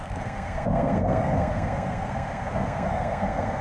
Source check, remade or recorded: remade